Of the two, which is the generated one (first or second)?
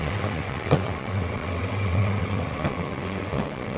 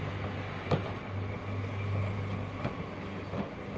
first